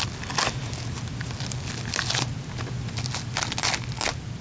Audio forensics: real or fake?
real